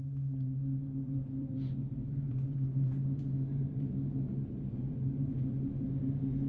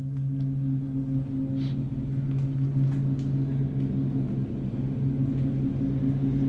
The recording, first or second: second